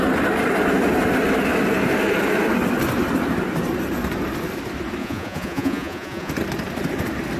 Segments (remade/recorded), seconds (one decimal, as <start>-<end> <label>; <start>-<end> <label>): 0.0-5.0 recorded; 5.0-6.3 remade; 6.3-7.4 recorded